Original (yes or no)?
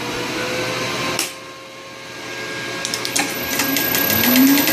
yes